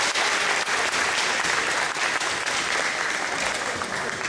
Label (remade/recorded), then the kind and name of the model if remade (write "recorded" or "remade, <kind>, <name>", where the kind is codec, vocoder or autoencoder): recorded